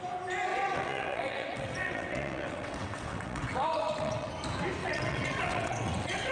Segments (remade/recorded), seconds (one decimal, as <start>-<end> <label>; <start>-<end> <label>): 0.0-0.5 recorded; 0.5-4.3 remade; 4.3-4.8 recorded; 4.8-6.3 remade